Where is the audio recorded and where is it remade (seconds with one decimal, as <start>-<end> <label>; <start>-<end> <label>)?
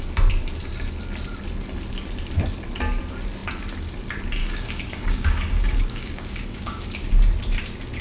0.0-4.4 recorded; 4.4-6.8 remade; 6.8-8.0 recorded